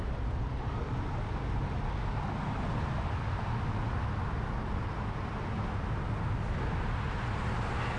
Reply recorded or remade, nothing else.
recorded